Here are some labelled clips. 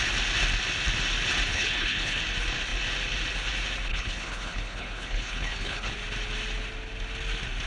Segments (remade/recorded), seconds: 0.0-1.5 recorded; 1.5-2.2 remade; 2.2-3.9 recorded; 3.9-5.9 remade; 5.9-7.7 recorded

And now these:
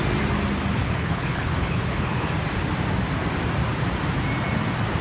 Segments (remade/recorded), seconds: 0.0-0.8 recorded; 0.8-2.3 remade; 2.3-5.0 recorded

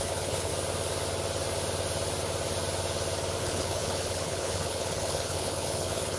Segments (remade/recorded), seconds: 0.0-0.5 remade; 0.5-3.4 recorded; 3.4-6.2 remade